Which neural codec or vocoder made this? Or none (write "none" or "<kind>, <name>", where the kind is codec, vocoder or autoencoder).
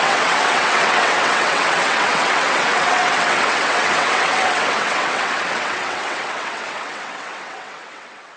vocoder, WaveNeXt